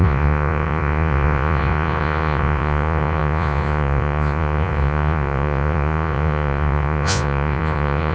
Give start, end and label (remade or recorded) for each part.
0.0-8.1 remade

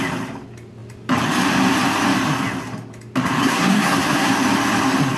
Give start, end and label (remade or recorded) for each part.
0.0-3.4 recorded; 3.4-4.3 remade; 4.3-5.2 recorded

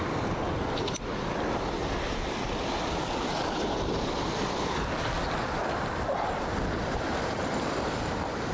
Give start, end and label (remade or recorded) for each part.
0.0-8.5 recorded

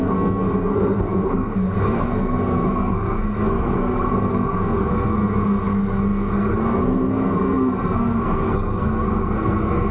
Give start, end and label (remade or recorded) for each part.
0.0-9.9 remade

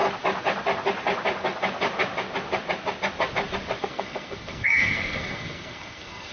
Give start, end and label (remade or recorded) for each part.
0.0-3.8 recorded; 3.8-6.3 remade

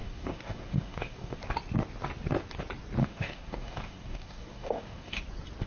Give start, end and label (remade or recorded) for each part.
0.0-1.4 remade; 1.4-3.0 recorded; 3.0-5.2 remade; 5.2-5.7 recorded

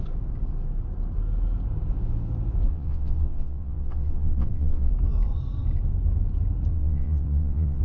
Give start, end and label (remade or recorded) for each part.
0.0-2.7 recorded; 2.7-4.9 remade; 4.9-6.7 recorded; 6.7-7.8 remade